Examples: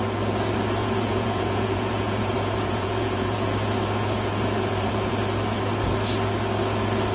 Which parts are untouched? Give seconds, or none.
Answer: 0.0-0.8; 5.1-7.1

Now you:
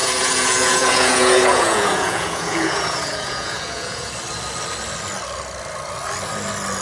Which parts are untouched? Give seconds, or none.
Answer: 4.1-6.8

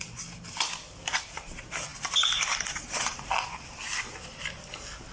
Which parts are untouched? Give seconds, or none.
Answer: 0.0-5.1

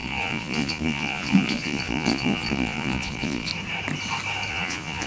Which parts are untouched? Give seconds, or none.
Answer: 3.5-4.5

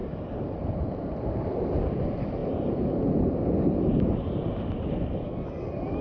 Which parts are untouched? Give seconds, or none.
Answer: 0.0-6.0

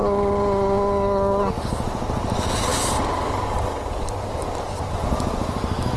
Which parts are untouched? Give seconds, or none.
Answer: 0.0-6.0

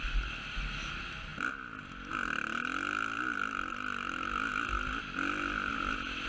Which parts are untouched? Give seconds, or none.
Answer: 0.0-6.3

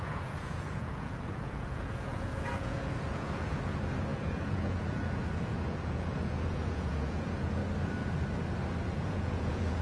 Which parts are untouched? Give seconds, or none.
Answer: 7.6-8.8